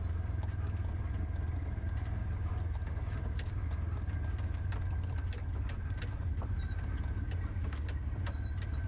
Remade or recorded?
recorded